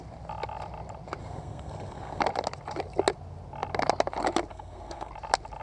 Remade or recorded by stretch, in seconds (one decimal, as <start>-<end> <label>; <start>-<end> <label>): 0.0-1.2 recorded; 1.2-2.2 remade; 2.2-4.5 recorded; 4.5-5.1 remade; 5.1-5.6 recorded

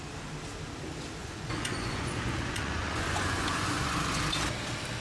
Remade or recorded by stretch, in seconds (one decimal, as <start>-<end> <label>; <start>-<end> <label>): 0.0-1.2 recorded; 1.2-4.2 remade; 4.2-5.0 recorded